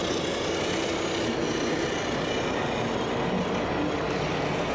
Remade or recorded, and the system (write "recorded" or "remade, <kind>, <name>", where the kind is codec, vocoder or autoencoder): recorded